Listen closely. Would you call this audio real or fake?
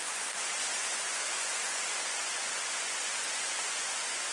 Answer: fake